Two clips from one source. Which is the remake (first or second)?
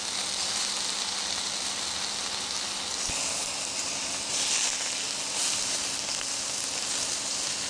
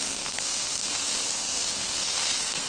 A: second